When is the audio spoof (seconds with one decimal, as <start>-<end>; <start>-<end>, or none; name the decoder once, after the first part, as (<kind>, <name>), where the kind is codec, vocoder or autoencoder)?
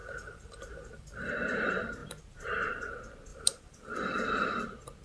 0.0-1.3 (vocoder, BigVGAN v2); 3.3-4.3